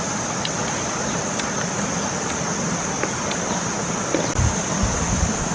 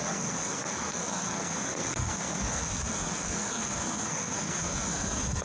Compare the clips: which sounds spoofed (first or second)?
second